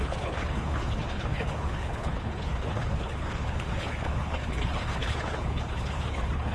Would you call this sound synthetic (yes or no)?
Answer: yes